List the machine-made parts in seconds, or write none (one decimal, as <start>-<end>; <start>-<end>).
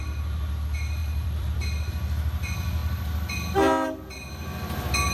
1.0-1.9